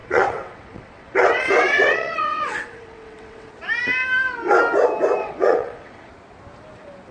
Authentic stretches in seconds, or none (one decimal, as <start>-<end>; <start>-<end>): 3.5-5.2; 6.1-7.1